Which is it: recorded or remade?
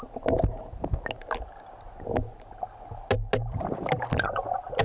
recorded